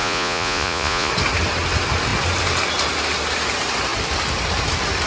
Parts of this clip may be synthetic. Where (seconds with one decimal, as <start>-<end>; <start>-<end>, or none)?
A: 0.0-1.1